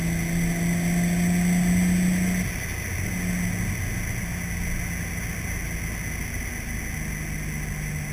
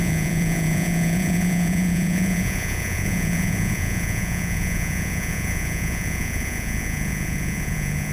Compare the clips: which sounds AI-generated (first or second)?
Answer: second